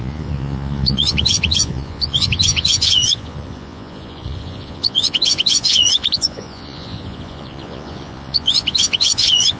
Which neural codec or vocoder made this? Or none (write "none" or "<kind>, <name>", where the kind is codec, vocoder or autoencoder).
vocoder, Vocos